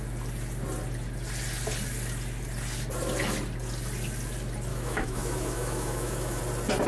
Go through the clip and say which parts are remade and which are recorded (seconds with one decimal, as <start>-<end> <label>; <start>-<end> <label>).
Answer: 0.0-4.7 recorded; 4.7-6.4 remade; 6.4-6.9 recorded